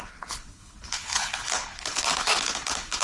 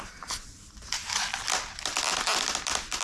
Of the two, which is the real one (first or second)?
second